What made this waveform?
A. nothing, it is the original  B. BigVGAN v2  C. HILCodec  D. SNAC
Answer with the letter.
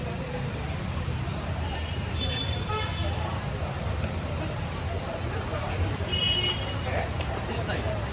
B